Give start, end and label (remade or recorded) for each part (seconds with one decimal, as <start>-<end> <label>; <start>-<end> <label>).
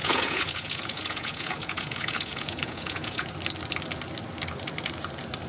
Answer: 0.0-3.3 remade; 3.3-5.5 recorded